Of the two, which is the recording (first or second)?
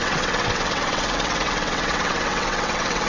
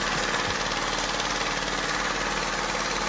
second